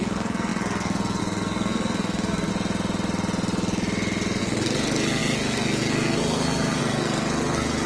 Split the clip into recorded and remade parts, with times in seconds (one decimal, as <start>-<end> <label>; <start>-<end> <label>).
0.0-2.5 remade; 2.5-4.4 recorded; 4.4-7.9 remade